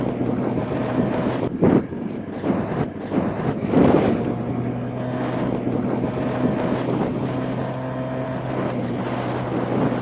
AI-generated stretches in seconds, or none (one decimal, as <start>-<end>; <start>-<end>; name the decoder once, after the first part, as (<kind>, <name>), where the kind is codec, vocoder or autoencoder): 0.6-2.9 (vocoder, BigVGAN v2)

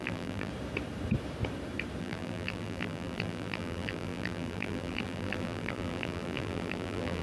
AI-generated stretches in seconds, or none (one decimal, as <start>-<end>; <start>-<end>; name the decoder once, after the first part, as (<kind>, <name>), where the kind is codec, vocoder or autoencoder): 0.0-0.5 (vocoder, BigVGAN v2); 2.0-7.2

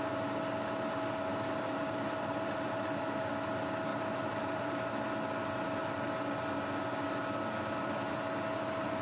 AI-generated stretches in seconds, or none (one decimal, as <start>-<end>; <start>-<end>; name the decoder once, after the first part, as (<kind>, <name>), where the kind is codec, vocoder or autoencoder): 1.3-3.3 (vocoder, BigVGAN v2); 3.9-4.9

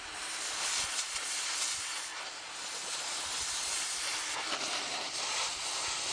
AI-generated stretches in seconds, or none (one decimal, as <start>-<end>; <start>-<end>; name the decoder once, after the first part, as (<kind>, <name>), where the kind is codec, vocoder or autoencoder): none

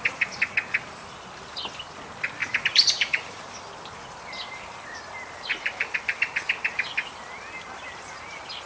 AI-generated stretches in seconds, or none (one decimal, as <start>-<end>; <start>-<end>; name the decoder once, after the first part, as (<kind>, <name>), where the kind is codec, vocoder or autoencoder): 2.4-3.4 (vocoder, BigVGAN v2); 5.5-6.3

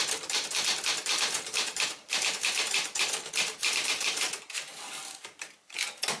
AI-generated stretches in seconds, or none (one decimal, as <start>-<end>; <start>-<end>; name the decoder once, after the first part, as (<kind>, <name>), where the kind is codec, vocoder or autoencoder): 1.1-4.8 (vocoder, BigVGAN v2)